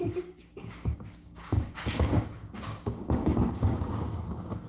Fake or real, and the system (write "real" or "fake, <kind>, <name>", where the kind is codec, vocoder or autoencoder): fake, codec, DAC